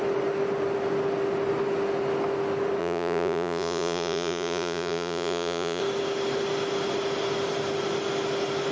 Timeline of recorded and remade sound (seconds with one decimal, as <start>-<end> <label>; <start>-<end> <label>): 0.0-2.8 recorded; 2.8-5.8 remade; 5.8-8.7 recorded